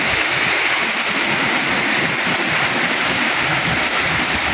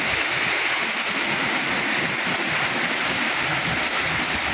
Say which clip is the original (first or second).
second